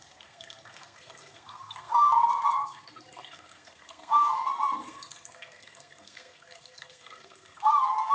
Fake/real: fake